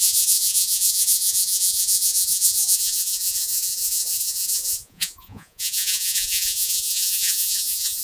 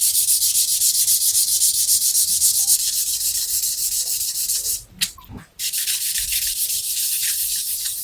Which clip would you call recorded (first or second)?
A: second